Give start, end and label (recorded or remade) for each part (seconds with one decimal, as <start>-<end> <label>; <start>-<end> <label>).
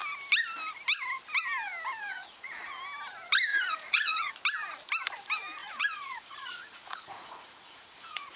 0.0-2.1 recorded; 2.1-2.7 remade; 2.7-3.5 recorded; 3.5-4.3 remade; 4.3-5.6 recorded; 5.6-8.4 remade